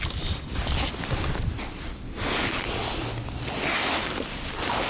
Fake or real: real